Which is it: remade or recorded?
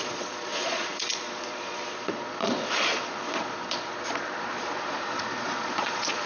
remade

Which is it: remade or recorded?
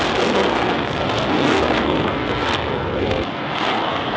remade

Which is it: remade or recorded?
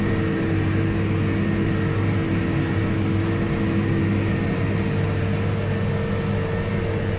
recorded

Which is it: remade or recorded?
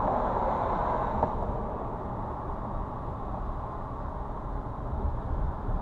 recorded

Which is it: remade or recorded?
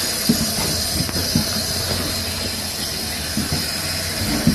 recorded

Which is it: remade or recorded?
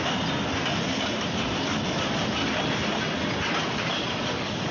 recorded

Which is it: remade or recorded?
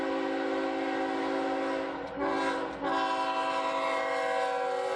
recorded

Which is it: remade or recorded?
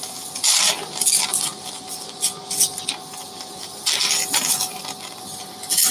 recorded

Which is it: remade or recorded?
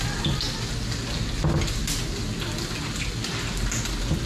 recorded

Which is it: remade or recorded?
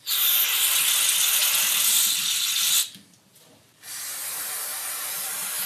remade